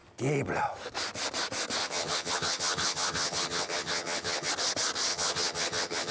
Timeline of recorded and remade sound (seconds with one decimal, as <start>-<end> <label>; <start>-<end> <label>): 0.0-1.8 recorded; 1.8-4.5 remade; 4.5-5.1 recorded; 5.1-6.1 remade